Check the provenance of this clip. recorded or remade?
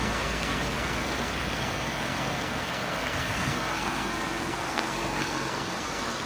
remade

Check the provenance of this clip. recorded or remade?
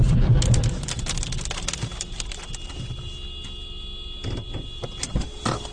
recorded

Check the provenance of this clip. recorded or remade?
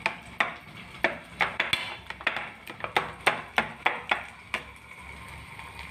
recorded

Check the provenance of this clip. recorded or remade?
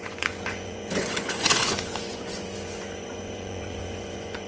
remade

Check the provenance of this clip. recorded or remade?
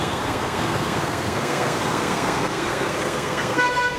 remade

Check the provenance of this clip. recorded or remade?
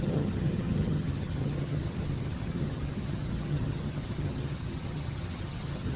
remade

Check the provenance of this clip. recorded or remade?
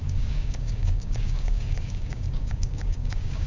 remade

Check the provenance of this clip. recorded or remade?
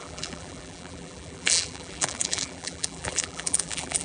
remade